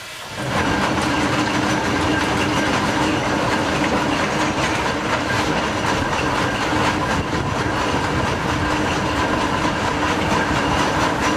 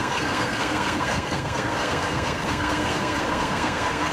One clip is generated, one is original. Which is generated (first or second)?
second